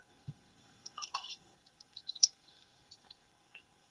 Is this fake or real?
fake